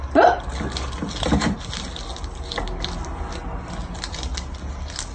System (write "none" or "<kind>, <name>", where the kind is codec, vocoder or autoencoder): none